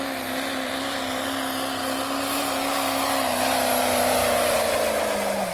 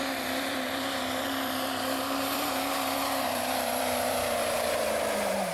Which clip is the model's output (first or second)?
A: second